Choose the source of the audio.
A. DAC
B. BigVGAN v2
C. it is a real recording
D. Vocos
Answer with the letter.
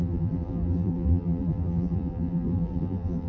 B